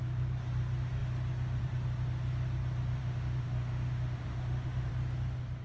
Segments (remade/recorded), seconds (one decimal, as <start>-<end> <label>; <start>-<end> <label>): 0.0-3.0 recorded; 3.0-4.9 remade; 4.9-5.6 recorded